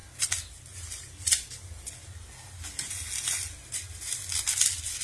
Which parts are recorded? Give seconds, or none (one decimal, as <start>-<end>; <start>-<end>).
0.0-5.0